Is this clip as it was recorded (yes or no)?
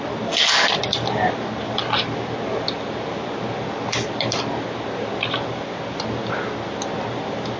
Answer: yes